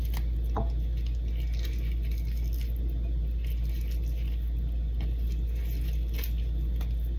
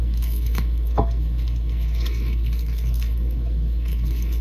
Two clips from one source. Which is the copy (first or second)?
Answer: second